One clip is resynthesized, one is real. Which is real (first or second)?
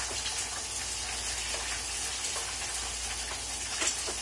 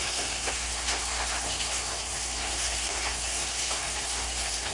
first